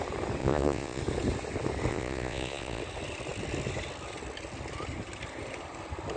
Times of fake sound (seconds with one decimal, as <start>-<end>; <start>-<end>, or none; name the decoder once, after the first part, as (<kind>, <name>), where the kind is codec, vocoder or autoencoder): 0.4-1.0 (vocoder, Vocos); 1.9-2.8